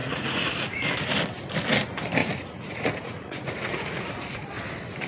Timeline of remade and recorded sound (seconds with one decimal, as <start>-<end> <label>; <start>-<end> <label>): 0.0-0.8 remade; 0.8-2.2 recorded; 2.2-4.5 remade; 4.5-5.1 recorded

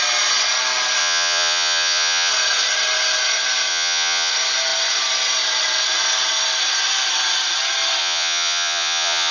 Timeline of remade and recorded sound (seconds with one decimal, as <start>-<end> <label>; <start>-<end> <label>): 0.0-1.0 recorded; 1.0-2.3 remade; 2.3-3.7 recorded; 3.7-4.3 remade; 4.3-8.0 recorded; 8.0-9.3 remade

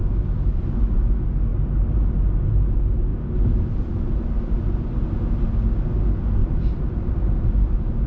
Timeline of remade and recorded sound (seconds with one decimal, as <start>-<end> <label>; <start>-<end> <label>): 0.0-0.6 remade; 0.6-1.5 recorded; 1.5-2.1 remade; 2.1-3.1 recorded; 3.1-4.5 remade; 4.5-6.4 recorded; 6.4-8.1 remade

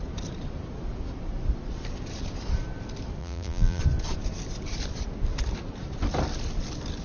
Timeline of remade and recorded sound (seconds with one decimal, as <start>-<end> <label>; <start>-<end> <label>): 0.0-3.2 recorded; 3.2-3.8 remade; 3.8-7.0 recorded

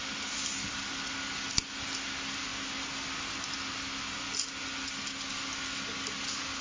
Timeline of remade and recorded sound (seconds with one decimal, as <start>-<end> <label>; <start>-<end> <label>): 0.0-6.6 recorded

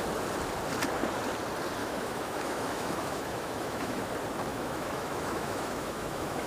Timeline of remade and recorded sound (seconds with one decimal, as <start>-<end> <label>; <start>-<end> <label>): 0.0-1.8 recorded; 1.8-4.0 remade; 4.0-4.5 recorded; 4.5-6.5 remade

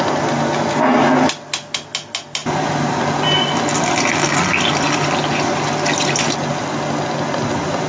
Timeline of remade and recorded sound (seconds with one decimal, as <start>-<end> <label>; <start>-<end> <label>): 0.0-7.9 recorded

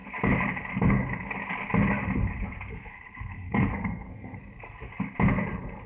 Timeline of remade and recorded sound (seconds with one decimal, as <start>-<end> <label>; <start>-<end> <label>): 0.0-2.7 recorded; 2.7-4.4 remade; 4.4-5.9 recorded